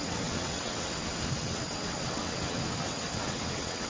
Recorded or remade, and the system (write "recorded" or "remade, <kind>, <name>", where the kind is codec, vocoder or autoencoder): remade, vocoder, WaveNeXt